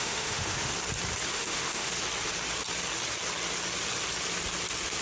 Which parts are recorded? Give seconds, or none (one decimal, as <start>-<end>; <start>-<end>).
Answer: 0.7-1.3; 1.9-5.0